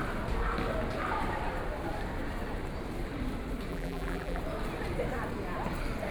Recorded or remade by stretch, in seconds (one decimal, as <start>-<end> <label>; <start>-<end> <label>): 0.0-3.7 recorded; 3.7-4.4 remade; 4.4-6.1 recorded